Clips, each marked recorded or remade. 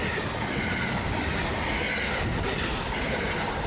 recorded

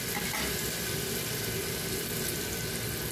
recorded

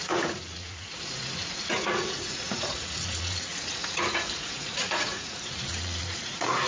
remade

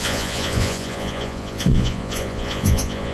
remade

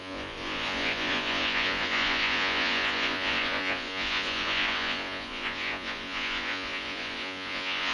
remade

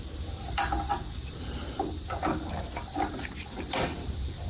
recorded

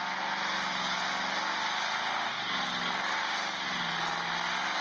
recorded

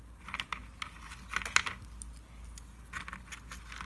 recorded